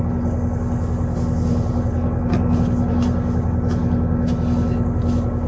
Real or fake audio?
real